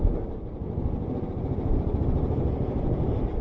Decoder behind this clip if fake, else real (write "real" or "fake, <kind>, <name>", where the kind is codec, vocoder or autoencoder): real